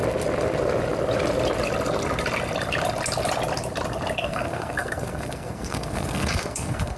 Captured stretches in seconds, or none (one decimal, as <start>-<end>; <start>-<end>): 0.0-4.2